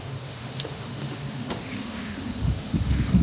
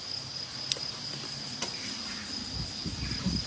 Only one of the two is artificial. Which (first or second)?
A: first